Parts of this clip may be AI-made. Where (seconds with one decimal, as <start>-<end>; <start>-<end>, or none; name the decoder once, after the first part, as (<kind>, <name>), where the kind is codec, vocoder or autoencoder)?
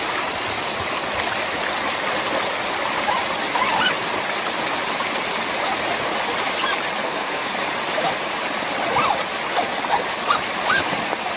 7.0-7.5 (codec, SNAC)